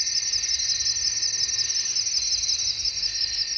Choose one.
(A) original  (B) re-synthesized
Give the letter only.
A